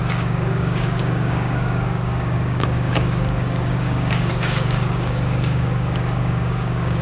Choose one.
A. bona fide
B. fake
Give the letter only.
B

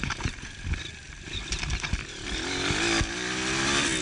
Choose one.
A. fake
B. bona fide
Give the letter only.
B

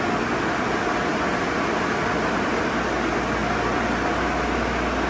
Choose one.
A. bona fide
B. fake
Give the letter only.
A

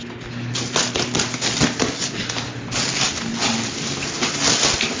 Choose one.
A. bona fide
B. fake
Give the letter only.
A